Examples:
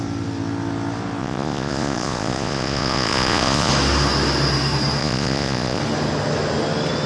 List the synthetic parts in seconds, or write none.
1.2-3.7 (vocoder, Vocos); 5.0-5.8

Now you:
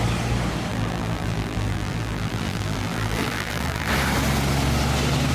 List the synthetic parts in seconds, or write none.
0.7-3.9 (vocoder, BigVGAN v2)

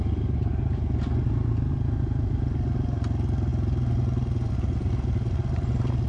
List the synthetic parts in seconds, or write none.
none

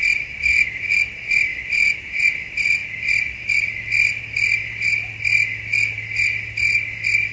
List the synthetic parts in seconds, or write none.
none

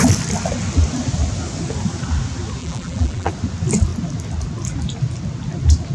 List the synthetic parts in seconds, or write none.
2.6-3.3 (vocoder, BigVGAN v2)